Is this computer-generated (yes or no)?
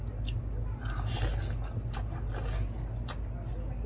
no